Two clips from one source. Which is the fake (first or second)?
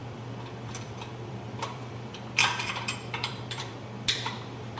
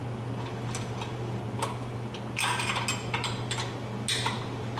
first